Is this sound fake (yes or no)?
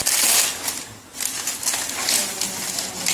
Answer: no